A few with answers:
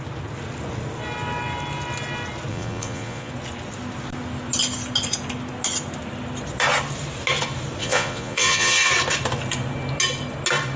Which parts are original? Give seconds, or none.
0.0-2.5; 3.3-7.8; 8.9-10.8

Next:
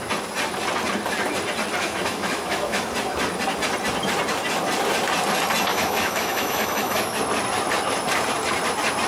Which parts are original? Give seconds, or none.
0.0-1.8; 2.9-5.7; 7.2-9.1

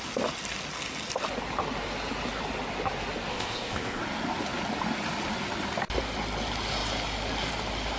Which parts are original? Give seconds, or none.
0.0-3.3; 4.0-8.0